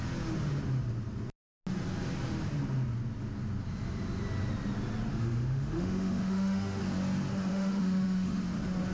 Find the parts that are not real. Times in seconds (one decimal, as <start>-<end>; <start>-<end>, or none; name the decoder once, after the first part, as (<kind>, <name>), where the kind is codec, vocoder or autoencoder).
5.1-6.8 (autoencoder, DAC-VAE); 7.5-8.4

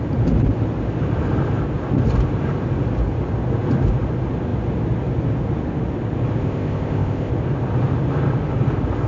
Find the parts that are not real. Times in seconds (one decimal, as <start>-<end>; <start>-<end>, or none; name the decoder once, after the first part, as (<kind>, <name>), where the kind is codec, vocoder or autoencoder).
6.4-7.3 (codec, ZipCodec)

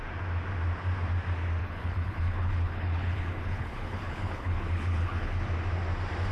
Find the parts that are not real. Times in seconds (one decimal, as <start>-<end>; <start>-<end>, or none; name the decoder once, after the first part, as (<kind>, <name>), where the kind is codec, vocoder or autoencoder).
1.6-5.4 (codec, HILCodec)

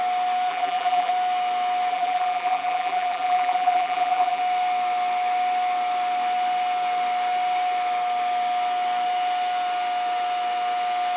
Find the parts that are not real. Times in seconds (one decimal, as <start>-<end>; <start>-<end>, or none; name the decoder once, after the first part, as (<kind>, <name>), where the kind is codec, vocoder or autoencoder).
0.5-1.1 (vocoder, BigVGAN v2); 1.9-4.4

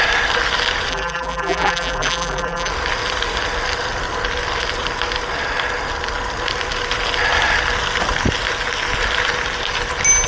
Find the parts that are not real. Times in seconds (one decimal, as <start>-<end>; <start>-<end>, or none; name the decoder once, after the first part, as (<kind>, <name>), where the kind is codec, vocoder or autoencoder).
0.9-2.7 (vocoder, BigVGAN v2)